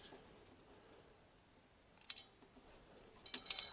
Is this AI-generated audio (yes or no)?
no